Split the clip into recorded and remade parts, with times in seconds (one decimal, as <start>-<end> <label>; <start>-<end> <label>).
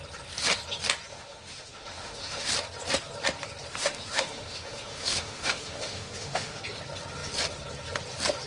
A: 0.0-1.1 recorded; 1.1-2.5 remade; 2.5-3.7 recorded; 3.7-6.6 remade; 6.6-8.5 recorded